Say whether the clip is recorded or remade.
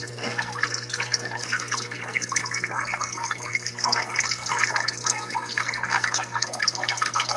remade